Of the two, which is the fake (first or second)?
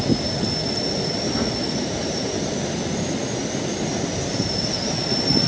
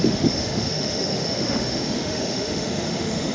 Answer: second